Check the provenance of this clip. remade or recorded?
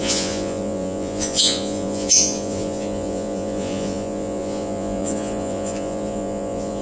remade